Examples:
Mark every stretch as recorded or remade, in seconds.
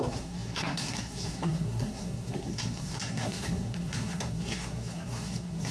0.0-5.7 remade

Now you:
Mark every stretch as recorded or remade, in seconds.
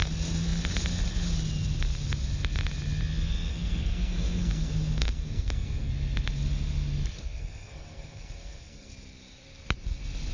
0.0-3.5 recorded; 3.5-5.9 remade; 5.9-7.4 recorded; 7.4-8.9 remade; 8.9-10.3 recorded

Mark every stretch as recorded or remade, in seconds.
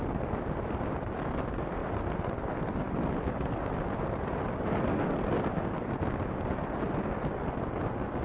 0.0-8.2 recorded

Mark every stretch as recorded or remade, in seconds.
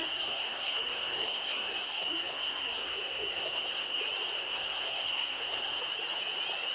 0.0-4.0 remade; 4.0-4.4 recorded; 4.4-5.8 remade; 5.8-6.7 recorded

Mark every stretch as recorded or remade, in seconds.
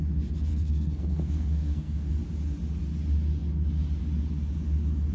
0.0-0.5 recorded; 0.5-2.1 remade; 2.1-5.1 recorded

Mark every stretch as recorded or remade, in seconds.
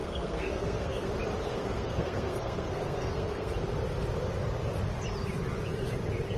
0.0-1.1 remade; 1.1-1.5 recorded; 1.5-3.5 remade; 3.5-6.4 recorded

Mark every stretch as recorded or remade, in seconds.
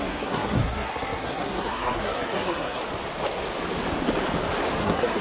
0.0-2.8 remade; 2.8-4.8 recorded; 4.8-5.2 remade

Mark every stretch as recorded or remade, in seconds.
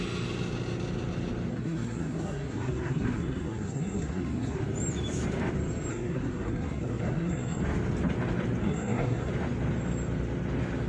0.0-1.5 recorded; 1.5-4.6 remade; 4.6-5.9 recorded; 5.9-7.6 remade; 7.6-8.6 recorded; 8.6-9.3 remade; 9.3-10.9 recorded